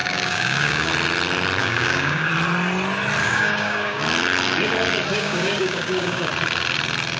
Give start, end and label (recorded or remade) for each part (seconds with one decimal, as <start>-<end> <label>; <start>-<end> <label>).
0.0-0.9 remade; 0.9-1.6 recorded; 1.6-2.3 remade; 2.3-3.2 recorded; 3.2-4.0 remade; 4.0-5.1 recorded; 5.1-6.3 remade; 6.3-7.2 recorded